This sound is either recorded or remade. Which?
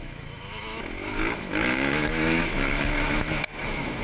remade